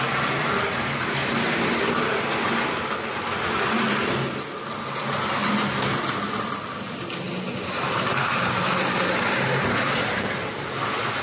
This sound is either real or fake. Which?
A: real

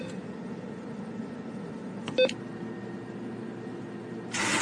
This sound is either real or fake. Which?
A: real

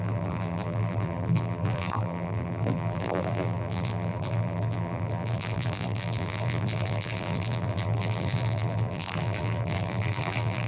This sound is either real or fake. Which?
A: fake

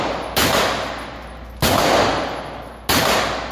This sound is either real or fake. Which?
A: real